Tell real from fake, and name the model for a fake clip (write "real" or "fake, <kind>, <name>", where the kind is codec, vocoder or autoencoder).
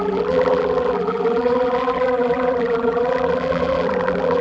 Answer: fake, vocoder, BigVGAN v2